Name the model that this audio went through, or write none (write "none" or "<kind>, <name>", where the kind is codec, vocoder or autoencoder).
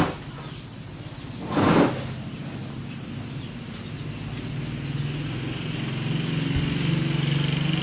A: none